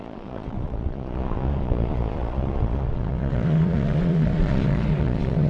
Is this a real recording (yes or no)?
no